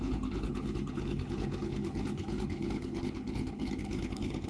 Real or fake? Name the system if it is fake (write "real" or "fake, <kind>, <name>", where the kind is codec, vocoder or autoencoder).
fake, codec, HILCodec